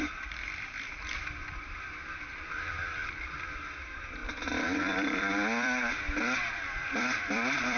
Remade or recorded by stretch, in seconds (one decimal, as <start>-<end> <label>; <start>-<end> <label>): 0.0-1.4 remade; 1.4-3.8 recorded; 3.8-7.8 remade